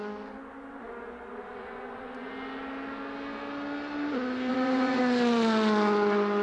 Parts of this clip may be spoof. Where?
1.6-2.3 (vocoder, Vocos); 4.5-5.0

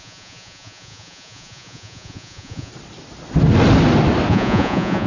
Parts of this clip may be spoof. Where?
0.0-2.7 (vocoder, Vocos); 4.3-5.1

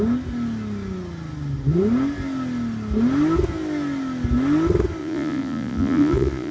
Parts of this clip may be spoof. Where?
5.0-6.5 (vocoder, Vocos)

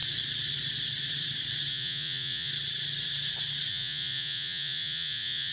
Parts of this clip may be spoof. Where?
1.7-2.5 (vocoder, Vocos); 3.7-5.5